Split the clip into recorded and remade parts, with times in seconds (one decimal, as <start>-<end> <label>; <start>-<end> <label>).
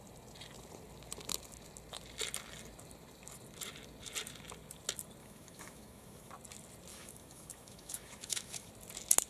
0.0-5.2 recorded; 5.2-6.3 remade; 6.3-6.9 recorded; 6.9-8.7 remade; 8.7-9.3 recorded